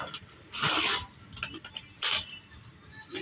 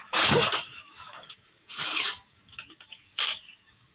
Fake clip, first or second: second